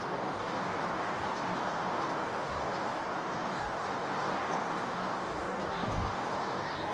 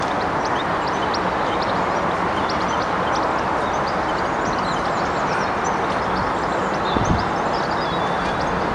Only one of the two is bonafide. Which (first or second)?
second